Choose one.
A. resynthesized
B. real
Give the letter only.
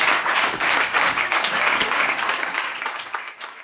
A